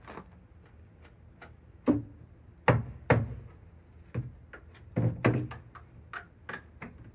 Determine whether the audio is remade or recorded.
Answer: recorded